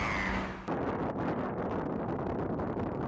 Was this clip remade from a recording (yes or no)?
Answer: no